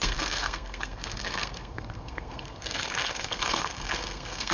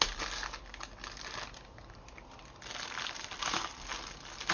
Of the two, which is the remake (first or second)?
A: first